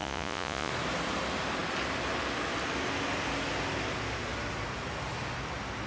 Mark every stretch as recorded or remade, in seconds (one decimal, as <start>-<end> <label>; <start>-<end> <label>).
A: 0.0-0.7 remade; 0.7-5.9 recorded